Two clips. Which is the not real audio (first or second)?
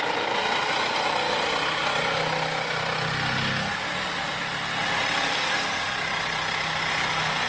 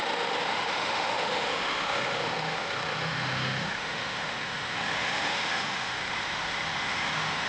second